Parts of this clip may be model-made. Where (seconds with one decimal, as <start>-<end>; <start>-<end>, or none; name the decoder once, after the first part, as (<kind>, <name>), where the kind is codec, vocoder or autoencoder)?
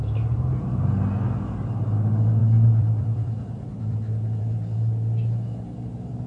2.4-4.4 (vocoder, BigVGAN v2)